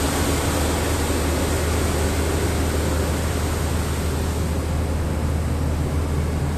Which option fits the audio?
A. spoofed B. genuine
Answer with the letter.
B